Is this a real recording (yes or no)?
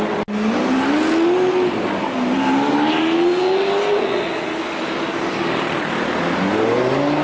yes